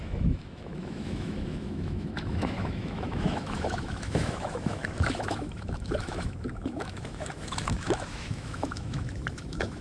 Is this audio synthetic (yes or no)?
yes